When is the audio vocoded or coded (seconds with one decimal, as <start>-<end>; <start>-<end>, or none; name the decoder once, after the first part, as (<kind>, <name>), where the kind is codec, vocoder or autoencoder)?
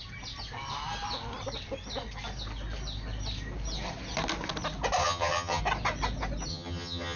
5.0-5.6 (vocoder, HiFi-GAN); 6.5-7.2